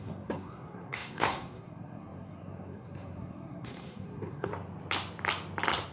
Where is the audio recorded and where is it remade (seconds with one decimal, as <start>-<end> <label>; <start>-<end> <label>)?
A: 0.0-4.5 remade; 4.5-5.9 recorded